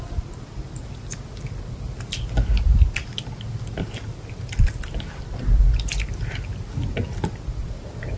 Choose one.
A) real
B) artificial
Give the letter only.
A